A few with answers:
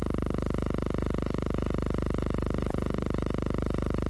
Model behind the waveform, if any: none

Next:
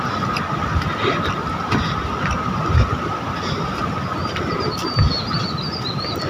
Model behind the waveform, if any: none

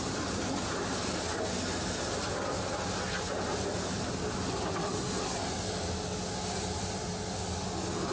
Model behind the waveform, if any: none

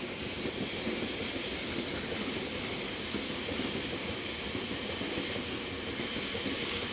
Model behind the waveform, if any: none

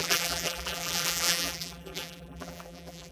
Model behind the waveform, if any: vocoder, BigVGAN v2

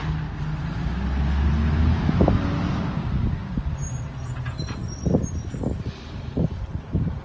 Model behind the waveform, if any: none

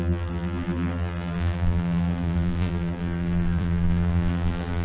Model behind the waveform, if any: vocoder, BigVGAN v2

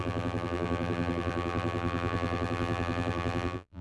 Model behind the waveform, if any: vocoder, BigVGAN v2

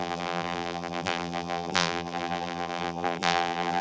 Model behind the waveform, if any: vocoder, BigVGAN v2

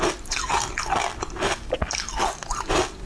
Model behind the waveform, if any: none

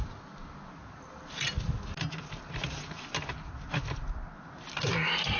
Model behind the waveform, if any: none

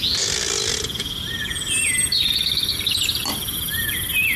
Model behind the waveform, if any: none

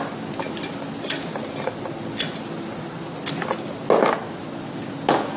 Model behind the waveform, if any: none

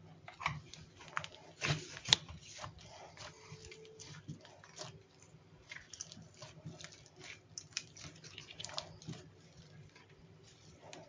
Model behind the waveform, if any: vocoder, BigVGAN v2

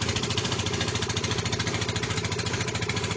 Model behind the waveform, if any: vocoder, BigVGAN v2